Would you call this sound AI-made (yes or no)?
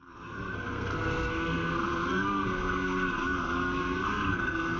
yes